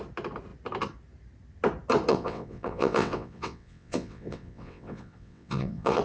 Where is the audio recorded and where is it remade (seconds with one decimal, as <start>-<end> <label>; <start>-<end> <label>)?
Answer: 0.0-2.1 recorded; 2.1-6.0 remade